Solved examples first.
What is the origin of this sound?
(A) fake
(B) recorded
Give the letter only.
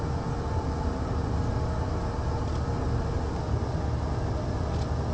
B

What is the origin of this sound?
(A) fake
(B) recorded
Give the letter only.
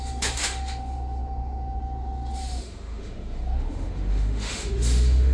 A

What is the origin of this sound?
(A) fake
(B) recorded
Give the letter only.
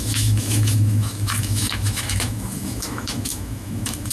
A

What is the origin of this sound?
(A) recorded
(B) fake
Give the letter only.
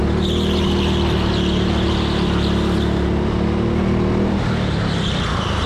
A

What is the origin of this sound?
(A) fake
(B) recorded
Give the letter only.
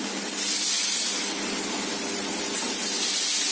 B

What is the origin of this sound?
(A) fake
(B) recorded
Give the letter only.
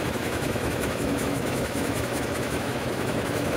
A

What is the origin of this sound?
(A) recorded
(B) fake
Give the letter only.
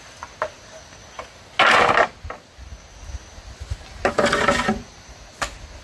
A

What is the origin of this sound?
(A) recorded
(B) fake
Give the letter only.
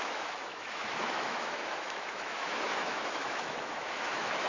B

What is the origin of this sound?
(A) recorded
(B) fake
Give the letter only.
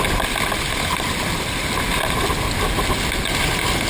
A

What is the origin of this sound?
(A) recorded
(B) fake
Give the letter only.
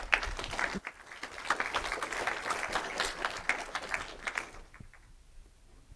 A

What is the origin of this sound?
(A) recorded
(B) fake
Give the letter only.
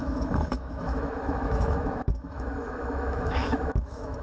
B